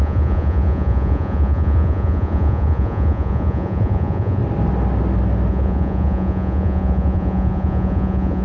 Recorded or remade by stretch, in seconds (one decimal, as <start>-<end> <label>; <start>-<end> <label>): 0.0-4.4 remade; 4.4-5.5 recorded; 5.5-8.4 remade

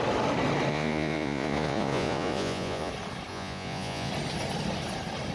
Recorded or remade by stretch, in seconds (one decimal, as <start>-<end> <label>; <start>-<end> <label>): 0.0-0.7 recorded; 0.7-2.9 remade; 2.9-3.3 recorded; 3.3-4.1 remade; 4.1-5.3 recorded

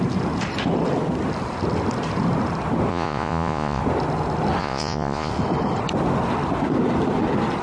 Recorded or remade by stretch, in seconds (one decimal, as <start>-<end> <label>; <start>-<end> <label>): 0.0-2.9 recorded; 2.9-3.8 remade; 3.8-4.6 recorded; 4.6-5.3 remade; 5.3-7.6 recorded

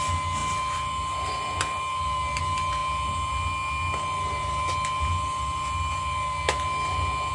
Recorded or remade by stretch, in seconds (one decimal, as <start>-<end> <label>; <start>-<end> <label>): 0.0-7.3 recorded

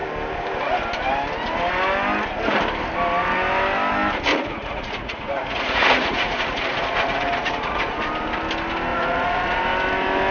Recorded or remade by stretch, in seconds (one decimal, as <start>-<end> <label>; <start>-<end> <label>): 0.0-4.3 recorded; 4.3-8.1 remade; 8.1-8.9 recorded; 8.9-9.6 remade; 9.6-10.3 recorded